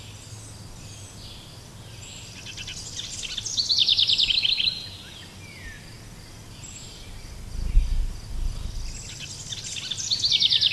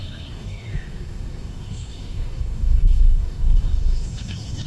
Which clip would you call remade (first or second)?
second